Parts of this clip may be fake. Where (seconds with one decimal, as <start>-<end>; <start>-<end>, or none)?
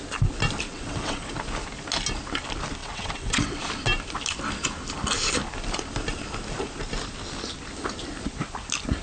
0.7-1.3; 2.8-3.6